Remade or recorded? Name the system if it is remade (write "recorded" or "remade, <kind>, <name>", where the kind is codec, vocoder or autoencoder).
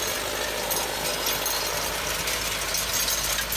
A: recorded